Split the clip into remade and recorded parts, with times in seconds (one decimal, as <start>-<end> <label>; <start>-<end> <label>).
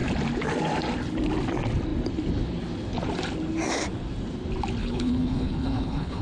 0.0-4.8 recorded; 4.8-6.2 remade